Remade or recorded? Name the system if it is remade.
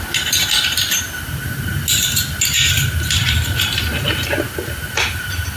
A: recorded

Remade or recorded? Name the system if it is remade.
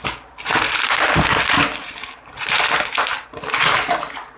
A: recorded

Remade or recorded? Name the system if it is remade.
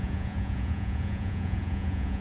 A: remade, vocoder, Vocos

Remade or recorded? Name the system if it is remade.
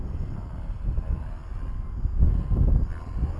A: recorded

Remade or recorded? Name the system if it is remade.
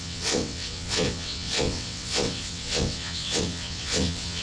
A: remade, vocoder, WaveNeXt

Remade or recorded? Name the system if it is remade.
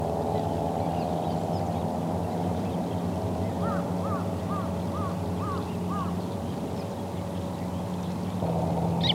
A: recorded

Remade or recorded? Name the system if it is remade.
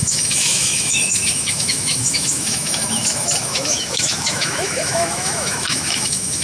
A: remade, autoencoder, DAC-VAE